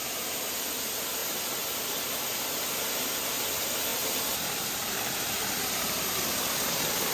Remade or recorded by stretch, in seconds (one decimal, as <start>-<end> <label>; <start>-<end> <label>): 0.0-3.9 recorded; 3.9-5.9 remade; 5.9-7.1 recorded